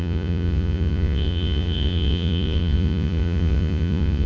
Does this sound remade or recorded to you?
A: remade